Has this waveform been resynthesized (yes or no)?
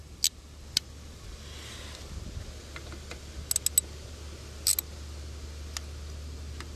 no